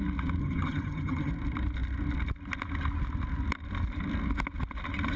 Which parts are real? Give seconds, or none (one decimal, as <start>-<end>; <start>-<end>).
0.0-0.4; 1.3-5.2

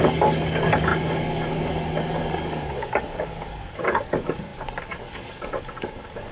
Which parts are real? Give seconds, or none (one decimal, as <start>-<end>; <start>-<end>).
none

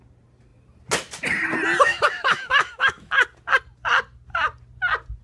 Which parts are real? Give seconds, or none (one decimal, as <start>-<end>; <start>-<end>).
0.0-1.9; 3.1-5.2

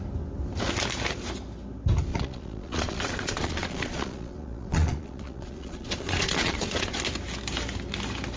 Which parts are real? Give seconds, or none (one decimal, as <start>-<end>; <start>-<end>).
0.0-2.1; 7.0-8.4

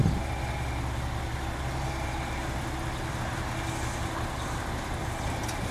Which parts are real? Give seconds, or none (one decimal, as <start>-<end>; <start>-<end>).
0.0-5.7

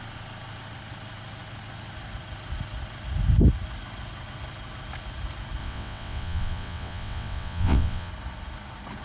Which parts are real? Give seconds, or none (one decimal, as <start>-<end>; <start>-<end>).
0.0-5.6; 8.1-9.0